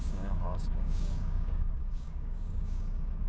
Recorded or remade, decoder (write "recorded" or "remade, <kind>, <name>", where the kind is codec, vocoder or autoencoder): remade, codec, DAC